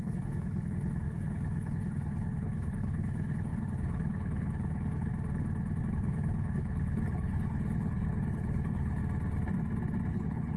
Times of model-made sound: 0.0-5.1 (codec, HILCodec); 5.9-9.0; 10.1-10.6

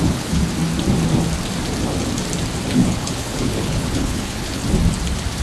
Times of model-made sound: 0.0-0.4 (codec, HILCodec); 2.7-4.6

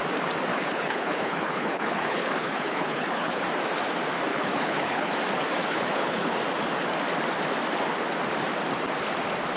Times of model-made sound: 0.5-3.4 (codec, HILCodec); 4.3-5.1; 5.6-6.4